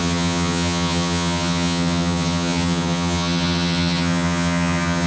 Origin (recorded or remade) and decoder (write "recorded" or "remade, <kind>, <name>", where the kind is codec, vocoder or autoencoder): remade, vocoder, HiFi-GAN